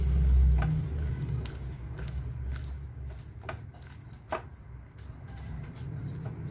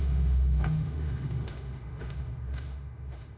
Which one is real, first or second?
first